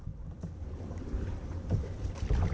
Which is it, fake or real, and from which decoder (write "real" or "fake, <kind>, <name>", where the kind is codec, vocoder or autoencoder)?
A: fake, vocoder, BigVGAN v2